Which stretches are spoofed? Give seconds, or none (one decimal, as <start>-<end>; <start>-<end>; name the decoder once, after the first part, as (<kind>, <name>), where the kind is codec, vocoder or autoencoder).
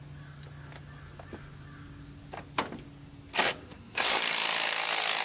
3.6-4.2 (codec, SNAC)